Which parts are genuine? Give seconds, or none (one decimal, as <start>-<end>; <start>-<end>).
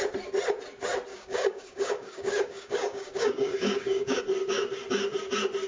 0.0-1.1; 4.2-5.7